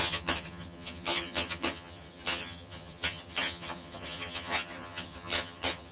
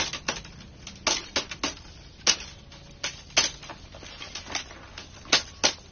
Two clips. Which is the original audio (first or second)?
second